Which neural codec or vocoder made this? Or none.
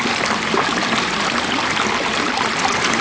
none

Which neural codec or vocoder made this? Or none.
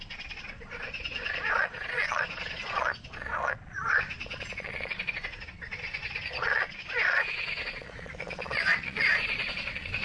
vocoder, Vocos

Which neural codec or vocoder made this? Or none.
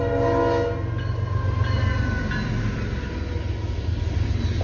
none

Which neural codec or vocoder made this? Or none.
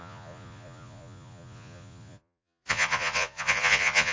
vocoder, Vocos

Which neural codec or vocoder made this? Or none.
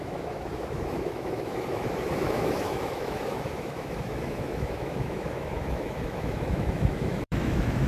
autoencoder, DAC-VAE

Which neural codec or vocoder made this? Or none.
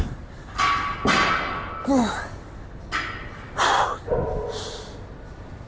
none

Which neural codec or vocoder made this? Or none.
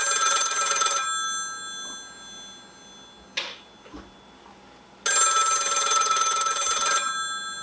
none